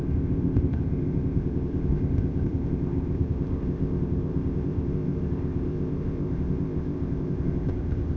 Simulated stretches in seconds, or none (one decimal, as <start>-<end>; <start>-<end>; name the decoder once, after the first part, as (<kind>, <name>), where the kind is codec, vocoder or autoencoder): 0.0-8.2 (codec, ZipCodec)